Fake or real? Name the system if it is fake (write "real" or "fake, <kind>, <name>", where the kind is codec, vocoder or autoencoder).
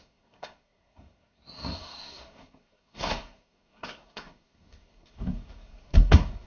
fake, codec, SNAC